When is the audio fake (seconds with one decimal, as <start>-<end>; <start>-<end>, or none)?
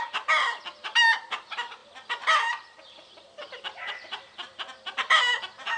1.8-5.2